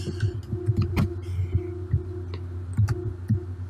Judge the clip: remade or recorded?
recorded